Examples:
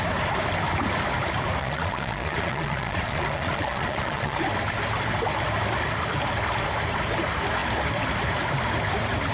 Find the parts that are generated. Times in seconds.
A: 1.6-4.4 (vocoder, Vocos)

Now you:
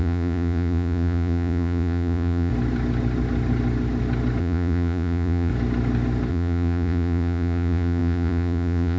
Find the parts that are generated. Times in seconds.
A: 0.0-2.5 (vocoder, Vocos); 4.4-5.5; 6.3-9.0

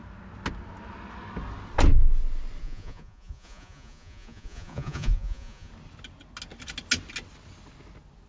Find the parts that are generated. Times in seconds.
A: 2.6-5.7 (vocoder, Vocos)